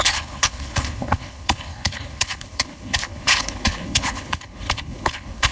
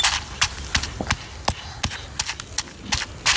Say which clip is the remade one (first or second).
first